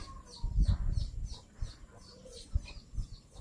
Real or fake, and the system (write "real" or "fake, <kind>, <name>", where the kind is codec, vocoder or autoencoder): real